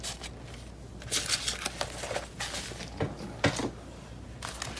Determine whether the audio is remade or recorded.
recorded